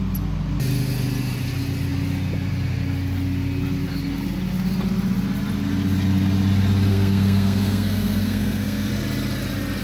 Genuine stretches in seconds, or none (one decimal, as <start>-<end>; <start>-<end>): 0.0-6.9; 8.9-9.8